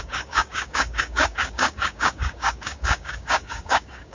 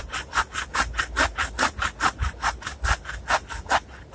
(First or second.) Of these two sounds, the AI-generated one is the first